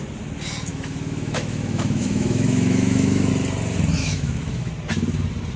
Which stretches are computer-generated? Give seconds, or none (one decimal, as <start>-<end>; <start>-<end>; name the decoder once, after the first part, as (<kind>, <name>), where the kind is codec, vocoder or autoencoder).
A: 0.7-3.3 (autoencoder, DAC-VAE); 4.0-4.7